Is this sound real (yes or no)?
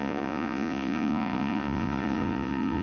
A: no